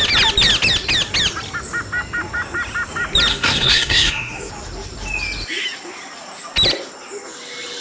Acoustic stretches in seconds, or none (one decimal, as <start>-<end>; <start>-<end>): 0.0-3.3; 4.5-7.8